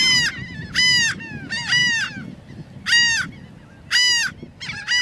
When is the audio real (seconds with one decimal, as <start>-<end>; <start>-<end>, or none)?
0.0-5.0